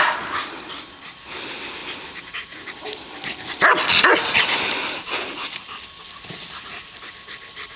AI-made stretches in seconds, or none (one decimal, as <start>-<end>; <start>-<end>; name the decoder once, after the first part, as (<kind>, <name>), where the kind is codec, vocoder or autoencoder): none